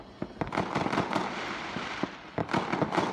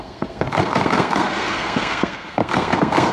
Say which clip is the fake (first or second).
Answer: second